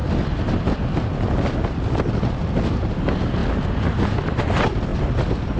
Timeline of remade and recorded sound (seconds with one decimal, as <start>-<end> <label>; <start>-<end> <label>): 0.0-4.9 recorded; 4.9-5.6 remade